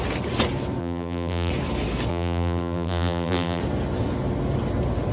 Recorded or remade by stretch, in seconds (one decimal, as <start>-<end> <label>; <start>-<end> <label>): 0.0-0.8 recorded; 0.8-1.5 remade; 1.5-2.1 recorded; 2.1-3.6 remade; 3.6-5.1 recorded